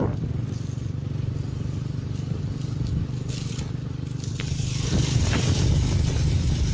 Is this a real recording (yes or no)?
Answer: yes